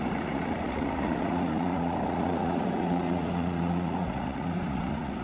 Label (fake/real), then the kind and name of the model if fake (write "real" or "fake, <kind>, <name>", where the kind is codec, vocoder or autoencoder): fake, vocoder, Vocos